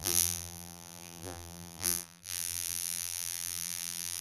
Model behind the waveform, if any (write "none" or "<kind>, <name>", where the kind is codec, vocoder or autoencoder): vocoder, BigVGAN v2